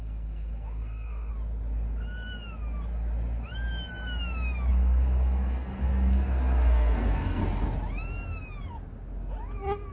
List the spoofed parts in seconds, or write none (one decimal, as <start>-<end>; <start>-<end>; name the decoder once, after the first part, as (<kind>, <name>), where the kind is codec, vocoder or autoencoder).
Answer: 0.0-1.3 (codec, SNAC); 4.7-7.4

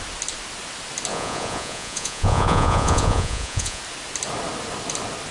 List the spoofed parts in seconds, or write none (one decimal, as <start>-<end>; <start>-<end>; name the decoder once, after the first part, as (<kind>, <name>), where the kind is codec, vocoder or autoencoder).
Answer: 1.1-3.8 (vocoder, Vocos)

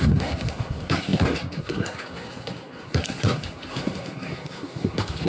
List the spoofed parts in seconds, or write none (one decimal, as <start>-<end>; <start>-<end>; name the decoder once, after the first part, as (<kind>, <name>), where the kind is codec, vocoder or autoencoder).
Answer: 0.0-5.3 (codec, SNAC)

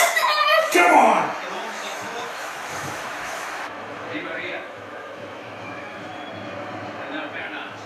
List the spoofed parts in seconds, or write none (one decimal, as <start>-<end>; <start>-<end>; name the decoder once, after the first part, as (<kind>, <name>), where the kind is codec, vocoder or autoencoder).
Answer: 0.0-0.7 (autoencoder, DAC-VAE); 1.5-6.1; 7.4-7.9